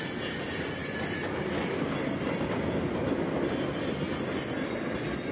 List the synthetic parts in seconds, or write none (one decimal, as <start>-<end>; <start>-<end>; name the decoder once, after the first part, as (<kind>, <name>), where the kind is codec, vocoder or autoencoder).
none